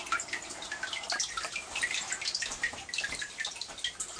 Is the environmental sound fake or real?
real